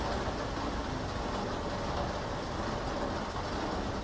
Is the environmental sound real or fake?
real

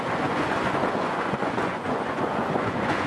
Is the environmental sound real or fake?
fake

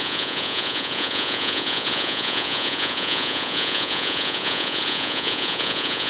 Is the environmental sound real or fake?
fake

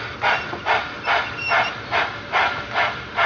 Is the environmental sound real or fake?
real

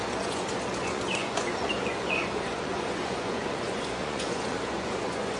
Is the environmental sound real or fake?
fake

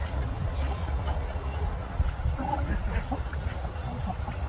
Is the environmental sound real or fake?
fake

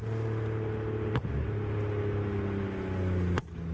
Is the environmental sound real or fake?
real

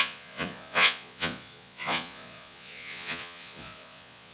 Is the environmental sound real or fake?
fake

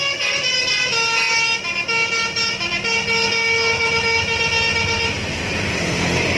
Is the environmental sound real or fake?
real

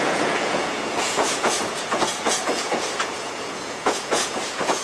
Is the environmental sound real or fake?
fake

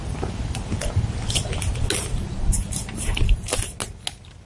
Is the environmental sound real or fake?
real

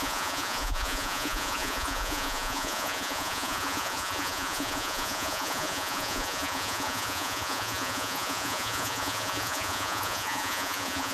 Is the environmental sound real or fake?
fake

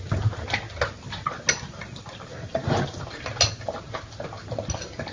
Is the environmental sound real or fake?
real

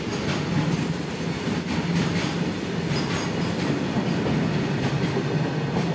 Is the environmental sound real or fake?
real